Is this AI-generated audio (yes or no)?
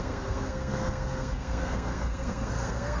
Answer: yes